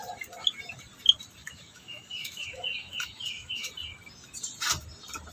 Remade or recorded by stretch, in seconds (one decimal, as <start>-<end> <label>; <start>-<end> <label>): 0.0-1.4 recorded; 1.4-3.7 remade; 3.7-5.3 recorded